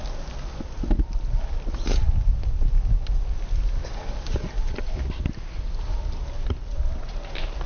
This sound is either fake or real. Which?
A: real